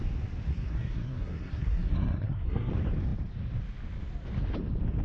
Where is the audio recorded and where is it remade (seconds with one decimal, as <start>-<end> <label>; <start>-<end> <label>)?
0.0-0.5 recorded; 0.5-2.7 remade; 2.7-5.0 recorded